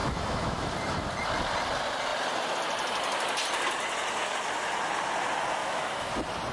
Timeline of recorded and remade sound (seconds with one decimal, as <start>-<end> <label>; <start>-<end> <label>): 0.0-0.6 remade; 0.6-5.6 recorded; 5.6-6.1 remade; 6.1-6.5 recorded